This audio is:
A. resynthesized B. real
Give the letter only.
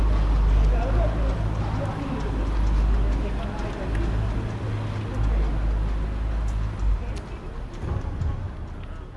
B